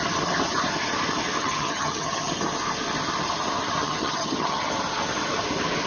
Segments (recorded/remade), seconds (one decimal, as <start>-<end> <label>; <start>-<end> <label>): 0.0-1.4 recorded; 1.4-2.3 remade; 2.3-3.8 recorded; 3.8-4.7 remade; 4.7-5.9 recorded